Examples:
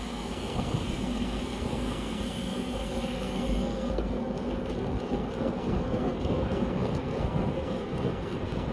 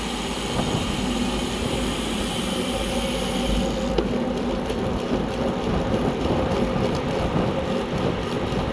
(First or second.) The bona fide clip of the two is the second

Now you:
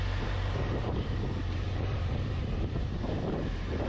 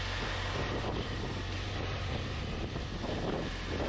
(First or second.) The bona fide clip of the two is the second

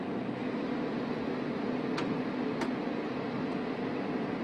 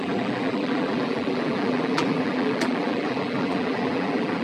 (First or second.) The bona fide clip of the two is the first